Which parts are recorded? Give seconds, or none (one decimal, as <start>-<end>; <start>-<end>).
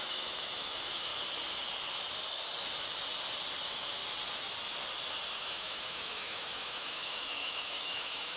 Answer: 1.1-3.6; 4.0-5.3